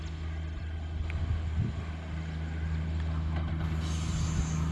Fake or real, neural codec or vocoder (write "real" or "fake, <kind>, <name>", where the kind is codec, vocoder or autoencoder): real